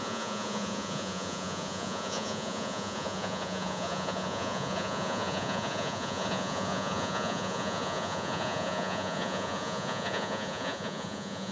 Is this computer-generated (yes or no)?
yes